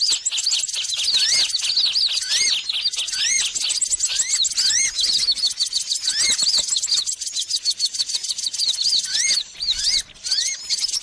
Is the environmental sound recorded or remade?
recorded